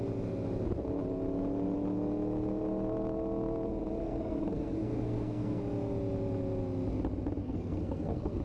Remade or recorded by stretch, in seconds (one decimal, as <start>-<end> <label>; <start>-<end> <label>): 0.0-4.0 recorded; 4.0-5.6 remade; 5.6-7.4 recorded; 7.4-8.4 remade